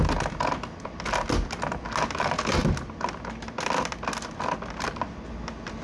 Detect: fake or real real